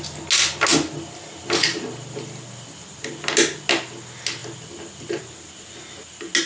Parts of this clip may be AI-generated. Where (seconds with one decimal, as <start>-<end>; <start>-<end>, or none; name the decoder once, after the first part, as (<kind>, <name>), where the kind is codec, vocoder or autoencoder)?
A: 0.7-2.8 (vocoder, BigVGAN v2)